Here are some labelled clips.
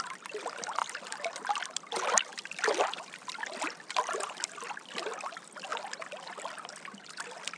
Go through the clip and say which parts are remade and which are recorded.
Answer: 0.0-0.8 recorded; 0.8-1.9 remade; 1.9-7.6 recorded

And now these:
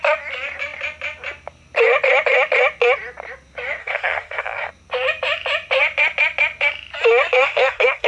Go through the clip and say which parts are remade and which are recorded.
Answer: 0.0-3.8 recorded; 3.8-4.7 remade; 4.7-7.4 recorded; 7.4-8.1 remade

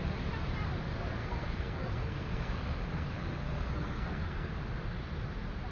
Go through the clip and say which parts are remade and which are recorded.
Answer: 0.0-1.2 recorded; 1.2-4.6 remade; 4.6-5.7 recorded

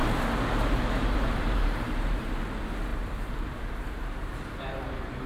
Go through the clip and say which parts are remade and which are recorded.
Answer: 0.0-2.4 remade; 2.4-2.9 recorded; 2.9-4.3 remade; 4.3-5.3 recorded